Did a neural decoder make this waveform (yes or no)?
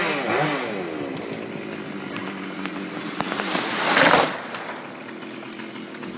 no